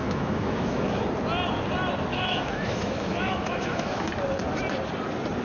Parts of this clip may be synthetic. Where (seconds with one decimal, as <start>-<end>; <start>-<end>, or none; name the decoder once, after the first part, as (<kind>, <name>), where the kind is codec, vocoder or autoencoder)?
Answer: 0.0-1.0 (autoencoder, DAC-VAE); 2.1-4.1